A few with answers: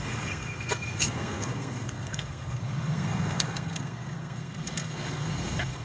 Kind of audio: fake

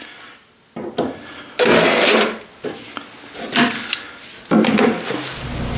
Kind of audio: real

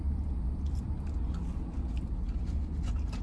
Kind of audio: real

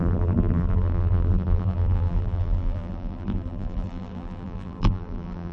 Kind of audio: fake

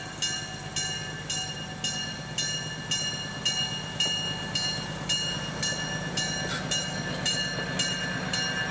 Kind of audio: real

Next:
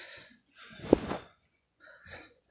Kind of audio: fake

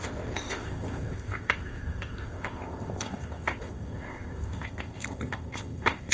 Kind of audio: fake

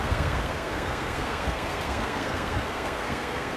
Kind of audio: fake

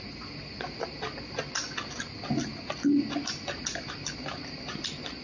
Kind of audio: real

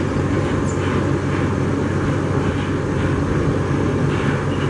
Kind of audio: real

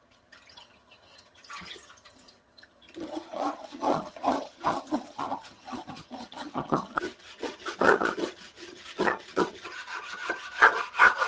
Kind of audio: fake